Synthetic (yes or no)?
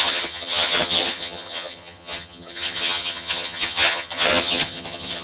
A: yes